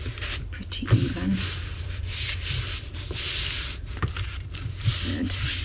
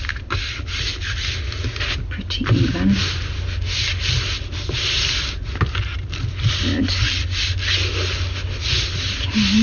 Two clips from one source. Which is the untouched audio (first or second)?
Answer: second